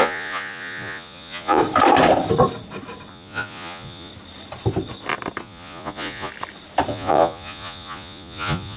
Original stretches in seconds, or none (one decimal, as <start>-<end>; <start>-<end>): 1.6-3.1; 4.1-5.4; 6.3-6.9